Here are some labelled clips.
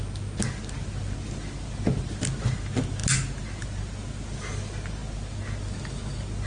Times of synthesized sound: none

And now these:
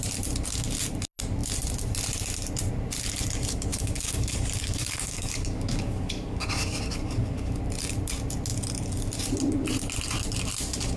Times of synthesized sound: 3.7-7.6 (codec, DAC)

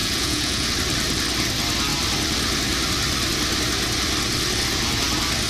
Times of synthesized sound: 0.0-0.7 (vocoder, Vocos)